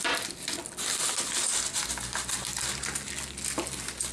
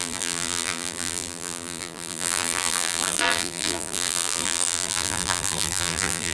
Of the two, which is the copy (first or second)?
second